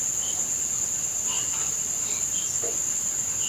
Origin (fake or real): real